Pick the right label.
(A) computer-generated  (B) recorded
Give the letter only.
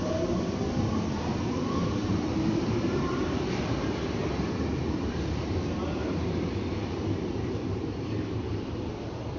A